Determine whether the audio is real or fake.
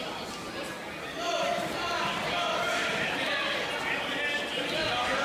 real